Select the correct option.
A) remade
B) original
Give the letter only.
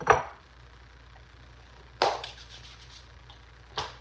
B